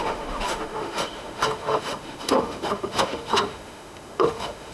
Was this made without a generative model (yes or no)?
no